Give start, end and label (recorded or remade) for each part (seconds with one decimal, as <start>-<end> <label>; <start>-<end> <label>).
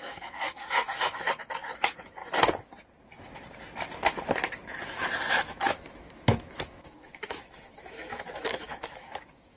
0.0-2.2 remade; 2.2-5.3 recorded; 5.3-9.6 remade